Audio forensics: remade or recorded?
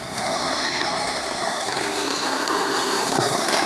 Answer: remade